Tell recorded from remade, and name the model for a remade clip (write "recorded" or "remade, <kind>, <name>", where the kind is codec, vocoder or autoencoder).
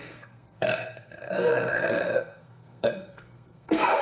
remade, codec, SNAC